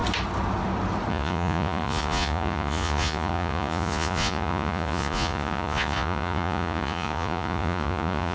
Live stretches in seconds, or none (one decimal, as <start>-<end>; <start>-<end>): 0.0-1.1